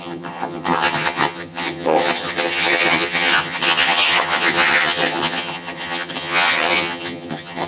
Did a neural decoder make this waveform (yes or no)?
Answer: yes